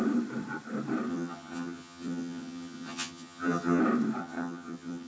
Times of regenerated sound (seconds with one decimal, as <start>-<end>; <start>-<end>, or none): 1.1-3.8; 4.2-5.1